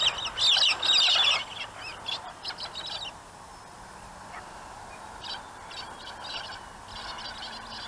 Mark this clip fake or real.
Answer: real